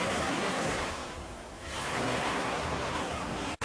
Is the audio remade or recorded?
remade